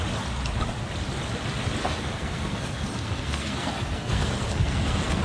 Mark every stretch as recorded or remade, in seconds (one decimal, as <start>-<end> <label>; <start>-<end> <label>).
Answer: 0.0-1.8 recorded; 1.8-5.2 remade